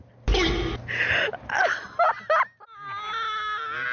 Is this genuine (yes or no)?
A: yes